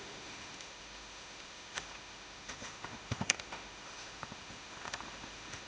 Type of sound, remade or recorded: remade